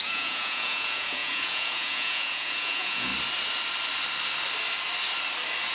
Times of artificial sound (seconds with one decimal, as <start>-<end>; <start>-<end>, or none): 0.0-3.1

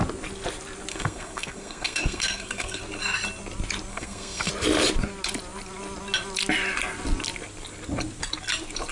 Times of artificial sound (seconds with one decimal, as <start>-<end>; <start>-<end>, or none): 0.9-2.8; 3.9-4.5